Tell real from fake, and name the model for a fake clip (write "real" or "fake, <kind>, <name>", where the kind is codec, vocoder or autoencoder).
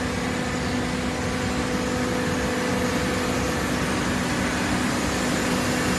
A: real